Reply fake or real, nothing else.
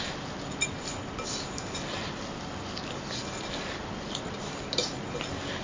real